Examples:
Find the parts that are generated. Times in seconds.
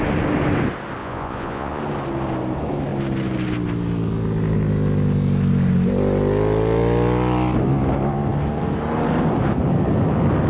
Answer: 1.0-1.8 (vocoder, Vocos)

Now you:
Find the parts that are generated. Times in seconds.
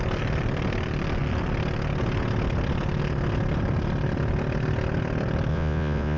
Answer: 5.5-6.2 (vocoder, Vocos)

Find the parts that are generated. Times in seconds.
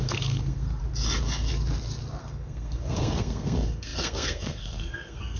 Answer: 0.0-0.8 (codec, SNAC); 2.2-5.4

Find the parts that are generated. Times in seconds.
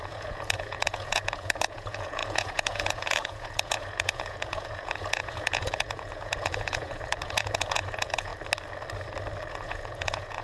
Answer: 0.0-8.3 (vocoder, Vocos); 9.5-10.4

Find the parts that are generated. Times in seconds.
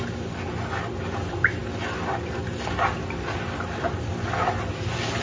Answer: none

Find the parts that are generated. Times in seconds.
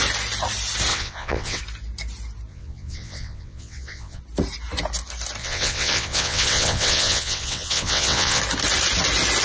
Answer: 0.9-1.6 (vocoder, WaveNeXt); 2.5-4.2; 5.4-8.4